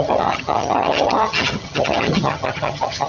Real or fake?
fake